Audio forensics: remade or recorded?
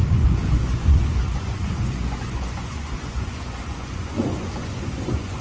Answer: remade